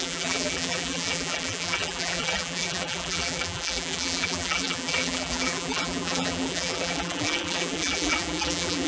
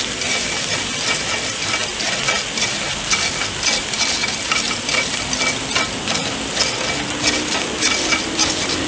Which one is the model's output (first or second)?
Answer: first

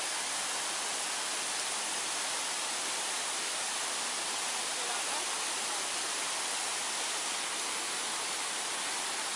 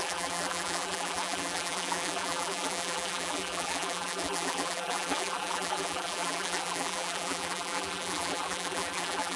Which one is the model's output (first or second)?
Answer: second